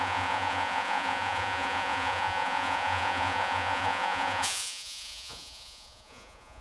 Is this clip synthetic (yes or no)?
yes